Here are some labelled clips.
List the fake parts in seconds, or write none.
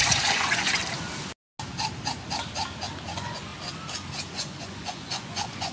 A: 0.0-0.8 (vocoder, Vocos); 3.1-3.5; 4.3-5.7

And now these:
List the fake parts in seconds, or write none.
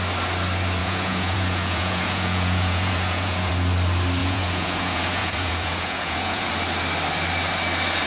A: 0.8-3.5 (vocoder, Vocos); 4.2-6.5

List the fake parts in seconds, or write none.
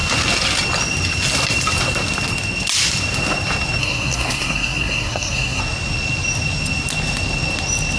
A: 3.8-5.6 (codec, SNAC)